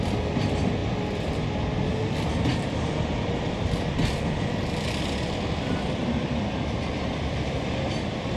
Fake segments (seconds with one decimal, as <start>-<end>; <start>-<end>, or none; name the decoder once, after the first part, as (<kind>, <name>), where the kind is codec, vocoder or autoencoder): none